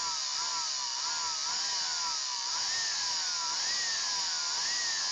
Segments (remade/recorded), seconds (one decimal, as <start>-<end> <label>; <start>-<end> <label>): 0.0-5.1 recorded